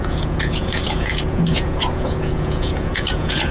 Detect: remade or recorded remade